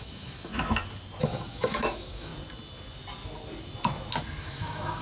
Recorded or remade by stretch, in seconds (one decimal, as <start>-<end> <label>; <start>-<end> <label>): 0.0-0.5 remade; 0.5-1.2 recorded; 1.2-2.3 remade; 2.3-4.4 recorded; 4.4-5.0 remade